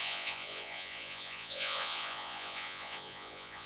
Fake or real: fake